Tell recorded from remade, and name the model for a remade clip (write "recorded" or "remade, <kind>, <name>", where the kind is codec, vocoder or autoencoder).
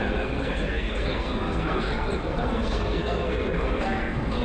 remade, codec, SNAC